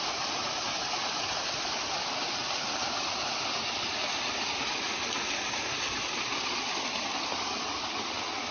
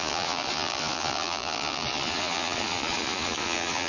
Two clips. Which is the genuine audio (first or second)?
first